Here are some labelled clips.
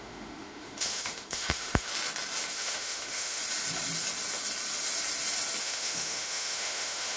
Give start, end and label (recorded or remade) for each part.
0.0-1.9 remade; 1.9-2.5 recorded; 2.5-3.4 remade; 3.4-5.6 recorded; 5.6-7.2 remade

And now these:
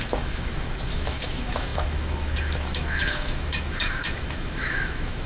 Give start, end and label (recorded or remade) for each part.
0.0-5.3 remade

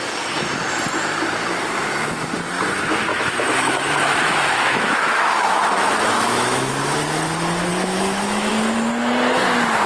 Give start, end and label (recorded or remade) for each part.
0.0-3.1 recorded; 3.1-6.7 remade; 6.7-7.7 recorded; 7.7-8.5 remade; 8.5-9.9 recorded